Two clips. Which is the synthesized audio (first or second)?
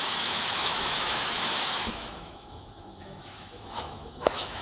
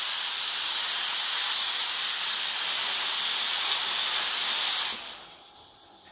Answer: first